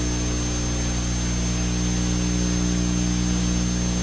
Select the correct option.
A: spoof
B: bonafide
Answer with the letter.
B